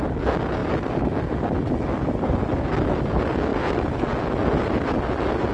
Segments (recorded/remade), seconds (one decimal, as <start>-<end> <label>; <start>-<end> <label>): 0.0-5.5 recorded